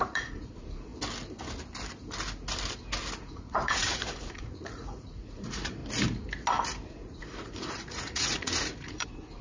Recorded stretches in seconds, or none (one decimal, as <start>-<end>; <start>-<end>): 0.9-3.2; 5.8-6.9